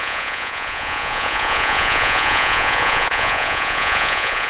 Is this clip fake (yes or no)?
yes